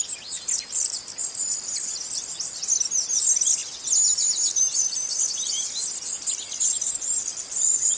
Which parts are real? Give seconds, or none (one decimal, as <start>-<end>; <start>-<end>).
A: 0.0-8.0